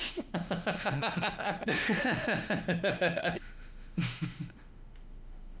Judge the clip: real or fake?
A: fake